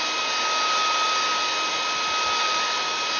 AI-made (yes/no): no